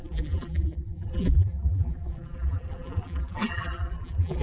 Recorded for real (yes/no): no